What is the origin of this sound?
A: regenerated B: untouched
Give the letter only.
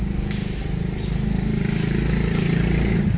B